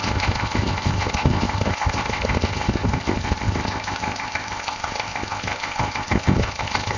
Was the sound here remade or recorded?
remade